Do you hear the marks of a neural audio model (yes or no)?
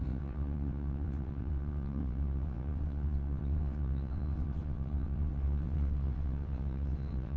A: yes